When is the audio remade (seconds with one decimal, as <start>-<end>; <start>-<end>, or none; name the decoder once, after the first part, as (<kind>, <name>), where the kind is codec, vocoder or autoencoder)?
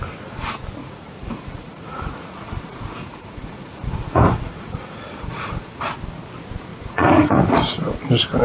0.8-5.8 (vocoder, Vocos); 6.7-8.0